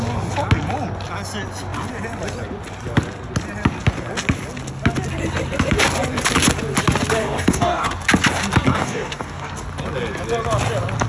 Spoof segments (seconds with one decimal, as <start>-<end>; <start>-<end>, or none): 7.2-7.9; 8.7-9.5